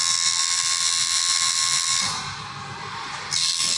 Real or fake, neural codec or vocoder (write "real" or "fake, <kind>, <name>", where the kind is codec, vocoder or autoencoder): fake, vocoder, BigVGAN v2